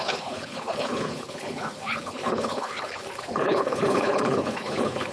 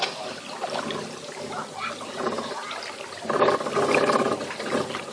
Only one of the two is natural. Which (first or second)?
second